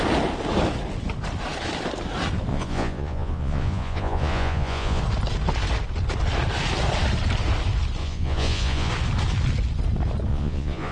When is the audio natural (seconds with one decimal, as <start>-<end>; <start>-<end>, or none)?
0.0-2.5; 5.0-8.0; 8.9-10.3